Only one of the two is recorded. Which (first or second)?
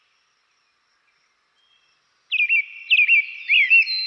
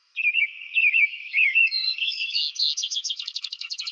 first